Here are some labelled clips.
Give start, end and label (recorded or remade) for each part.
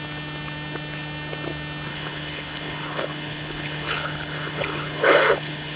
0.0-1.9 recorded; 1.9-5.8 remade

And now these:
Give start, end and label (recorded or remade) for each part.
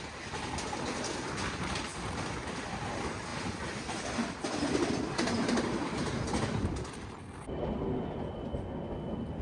0.0-9.4 recorded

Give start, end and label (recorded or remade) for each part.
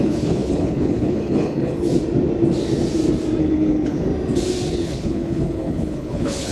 0.0-1.9 remade; 1.9-3.4 recorded; 3.4-4.1 remade; 4.1-4.7 recorded; 4.7-6.5 remade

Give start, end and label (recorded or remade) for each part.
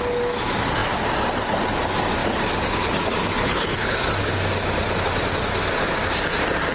0.0-3.4 recorded; 3.4-4.1 remade; 4.1-6.7 recorded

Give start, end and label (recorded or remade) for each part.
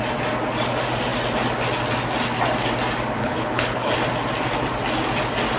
0.0-3.2 recorded; 3.2-3.9 remade; 3.9-5.6 recorded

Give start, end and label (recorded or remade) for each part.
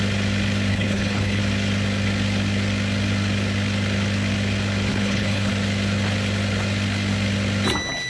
0.0-0.7 recorded; 0.7-1.4 remade; 1.4-4.9 recorded; 4.9-5.5 remade; 5.5-8.1 recorded